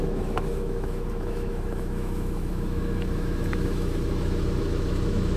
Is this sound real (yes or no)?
no